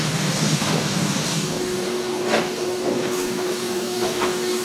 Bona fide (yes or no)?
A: no